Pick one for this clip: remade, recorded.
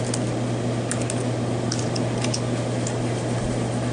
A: recorded